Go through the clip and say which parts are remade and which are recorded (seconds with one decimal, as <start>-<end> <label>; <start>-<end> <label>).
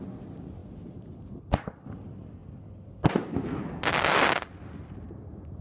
0.0-5.6 recorded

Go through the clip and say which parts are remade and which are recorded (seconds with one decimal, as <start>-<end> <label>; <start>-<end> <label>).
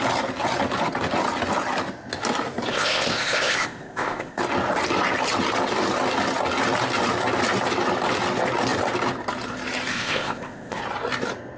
0.0-2.7 recorded; 2.7-4.4 remade; 4.4-9.9 recorded; 9.9-10.8 remade; 10.8-11.6 recorded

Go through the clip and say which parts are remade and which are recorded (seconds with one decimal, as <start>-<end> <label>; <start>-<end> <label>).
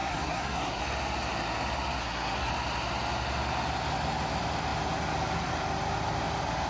0.0-0.8 remade; 0.8-2.0 recorded; 2.0-2.5 remade; 2.5-6.7 recorded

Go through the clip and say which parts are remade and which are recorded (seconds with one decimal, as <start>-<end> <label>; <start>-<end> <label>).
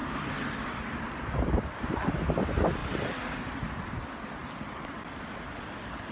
0.0-1.8 remade; 1.8-4.4 recorded; 4.4-5.5 remade; 5.5-6.1 recorded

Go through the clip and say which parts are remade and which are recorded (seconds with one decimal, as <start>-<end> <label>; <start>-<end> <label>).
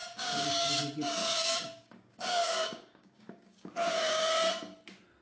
0.0-0.7 remade; 0.7-1.2 recorded; 1.2-4.3 remade; 4.3-5.2 recorded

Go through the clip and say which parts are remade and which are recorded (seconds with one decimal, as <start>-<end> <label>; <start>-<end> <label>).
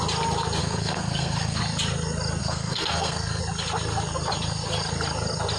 0.0-0.6 recorded; 0.6-1.6 remade; 1.6-2.4 recorded; 2.4-3.4 remade; 3.4-5.6 recorded